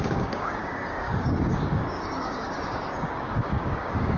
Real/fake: fake